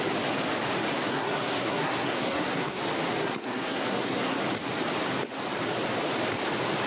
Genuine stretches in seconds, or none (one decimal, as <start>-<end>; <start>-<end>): 0.0-1.1; 2.8-3.2; 4.4-6.9